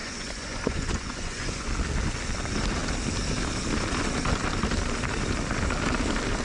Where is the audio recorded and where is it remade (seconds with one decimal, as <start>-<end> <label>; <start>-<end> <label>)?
0.0-1.7 remade; 1.7-6.4 recorded

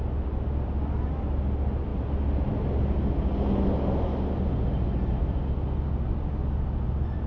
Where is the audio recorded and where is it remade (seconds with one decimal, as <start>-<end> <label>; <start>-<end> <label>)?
0.0-7.3 recorded

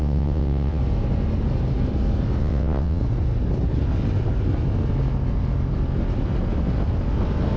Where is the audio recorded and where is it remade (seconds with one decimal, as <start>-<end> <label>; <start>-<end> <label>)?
0.0-0.8 remade; 0.8-2.4 recorded; 2.4-3.0 remade; 3.0-7.6 recorded

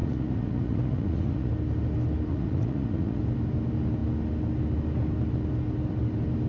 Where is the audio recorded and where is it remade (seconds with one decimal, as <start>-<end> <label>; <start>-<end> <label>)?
0.0-1.5 remade; 1.5-2.3 recorded; 2.3-3.2 remade; 3.2-6.5 recorded

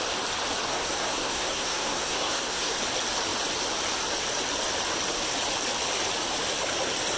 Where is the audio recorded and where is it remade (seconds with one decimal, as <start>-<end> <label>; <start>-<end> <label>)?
0.0-0.7 recorded; 0.7-2.8 remade; 2.8-7.2 recorded

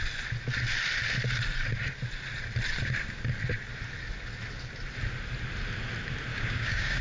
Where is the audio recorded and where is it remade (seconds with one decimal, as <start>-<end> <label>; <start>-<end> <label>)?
0.0-6.3 recorded; 6.3-7.0 remade

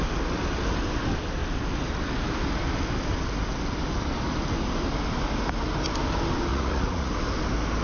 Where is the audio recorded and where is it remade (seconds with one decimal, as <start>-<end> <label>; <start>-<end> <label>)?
0.0-6.5 recorded; 6.5-7.1 remade; 7.1-7.8 recorded